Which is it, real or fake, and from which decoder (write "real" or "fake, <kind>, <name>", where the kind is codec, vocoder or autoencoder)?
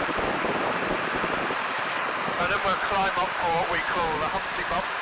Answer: fake, vocoder, BigVGAN v2